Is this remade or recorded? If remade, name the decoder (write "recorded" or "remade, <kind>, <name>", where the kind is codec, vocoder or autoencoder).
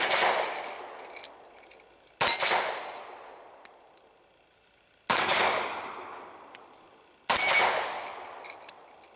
recorded